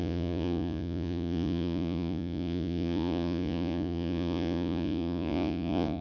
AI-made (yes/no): yes